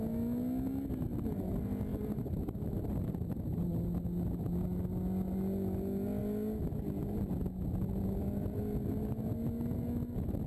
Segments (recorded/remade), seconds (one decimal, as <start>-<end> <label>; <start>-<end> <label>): 0.0-1.9 recorded; 1.9-3.7 remade; 3.7-10.5 recorded